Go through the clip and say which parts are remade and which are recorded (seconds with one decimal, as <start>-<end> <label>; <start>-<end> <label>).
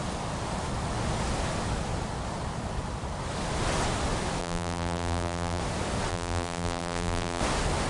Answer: 0.0-4.4 recorded; 4.4-5.6 remade; 5.6-6.1 recorded; 6.1-7.4 remade; 7.4-7.9 recorded